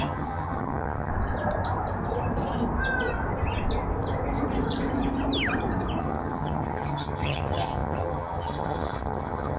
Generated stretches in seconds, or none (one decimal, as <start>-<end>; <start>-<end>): 0.0-1.1; 6.0-9.6